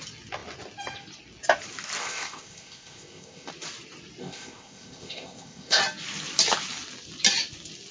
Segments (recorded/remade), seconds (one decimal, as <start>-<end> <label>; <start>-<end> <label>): 0.0-2.0 recorded; 2.0-3.5 remade; 3.5-4.2 recorded; 4.2-5.8 remade; 5.8-7.9 recorded

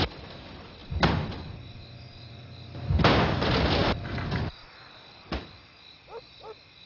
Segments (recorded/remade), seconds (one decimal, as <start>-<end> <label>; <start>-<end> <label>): 0.0-0.8 recorded; 0.8-2.3 remade; 2.3-3.8 recorded; 3.8-5.3 remade; 5.3-6.9 recorded

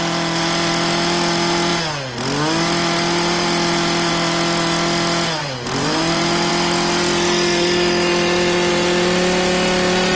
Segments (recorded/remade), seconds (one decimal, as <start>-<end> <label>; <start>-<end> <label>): 0.0-5.4 recorded; 5.4-6.5 remade; 6.5-10.2 recorded

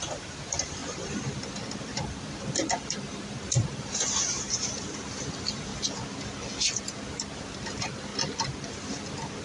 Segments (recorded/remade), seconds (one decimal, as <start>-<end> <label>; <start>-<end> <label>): 0.0-0.8 remade; 0.8-1.3 recorded; 1.3-5.7 remade; 5.7-6.8 recorded; 6.8-8.1 remade; 8.1-8.7 recorded; 8.7-9.4 remade

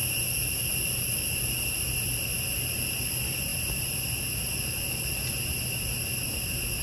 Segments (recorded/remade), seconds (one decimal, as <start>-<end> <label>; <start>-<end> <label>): 0.0-3.5 recorded; 3.5-4.1 remade; 4.1-6.8 recorded

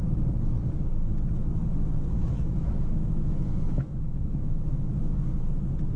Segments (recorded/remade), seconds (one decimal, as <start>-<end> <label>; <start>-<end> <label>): 0.0-2.2 recorded; 2.2-5.3 remade; 5.3-6.0 recorded